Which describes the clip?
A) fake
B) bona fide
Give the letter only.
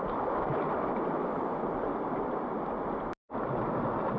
B